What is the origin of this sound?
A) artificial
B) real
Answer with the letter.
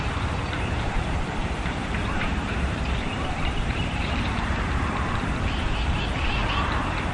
A